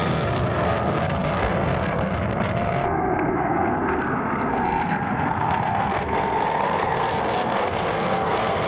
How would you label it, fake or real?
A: fake